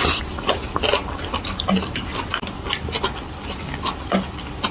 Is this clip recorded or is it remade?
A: recorded